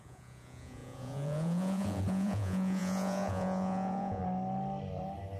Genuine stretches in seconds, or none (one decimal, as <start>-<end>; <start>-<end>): 4.2-5.4